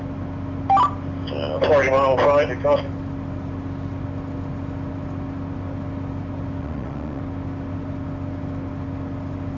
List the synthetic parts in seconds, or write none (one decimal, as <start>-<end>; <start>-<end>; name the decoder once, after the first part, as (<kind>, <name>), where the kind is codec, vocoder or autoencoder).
6.6-7.2 (vocoder, Vocos)